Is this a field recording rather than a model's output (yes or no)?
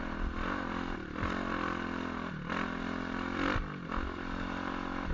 yes